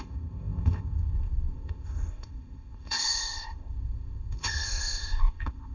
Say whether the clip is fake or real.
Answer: fake